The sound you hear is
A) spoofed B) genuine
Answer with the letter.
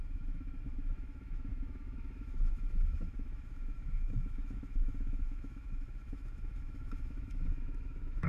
A